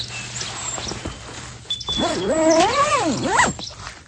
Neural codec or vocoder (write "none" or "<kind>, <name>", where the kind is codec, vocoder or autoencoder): none